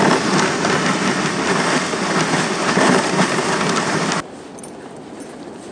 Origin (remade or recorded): recorded